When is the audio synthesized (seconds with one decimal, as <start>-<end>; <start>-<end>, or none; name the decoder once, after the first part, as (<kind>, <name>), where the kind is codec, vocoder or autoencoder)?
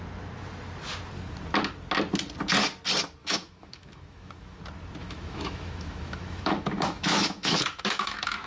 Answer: 3.2-4.6 (autoencoder, DAC-VAE); 5.0-8.5